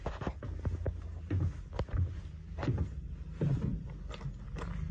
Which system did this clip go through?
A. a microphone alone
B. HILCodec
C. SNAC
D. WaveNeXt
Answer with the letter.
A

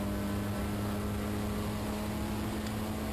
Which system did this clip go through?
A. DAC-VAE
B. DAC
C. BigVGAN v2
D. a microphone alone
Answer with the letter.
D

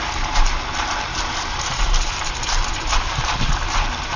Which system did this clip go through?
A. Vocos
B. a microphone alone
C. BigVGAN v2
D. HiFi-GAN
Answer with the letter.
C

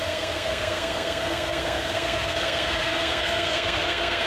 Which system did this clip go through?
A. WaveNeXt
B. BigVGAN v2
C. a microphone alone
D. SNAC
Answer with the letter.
D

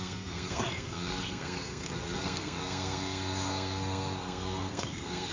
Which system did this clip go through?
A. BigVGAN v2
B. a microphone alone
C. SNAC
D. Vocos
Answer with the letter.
C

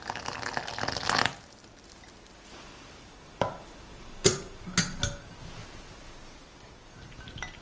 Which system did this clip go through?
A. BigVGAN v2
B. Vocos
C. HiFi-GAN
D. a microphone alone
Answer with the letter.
D